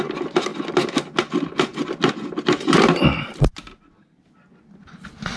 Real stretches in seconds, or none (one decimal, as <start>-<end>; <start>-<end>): 0.0-5.4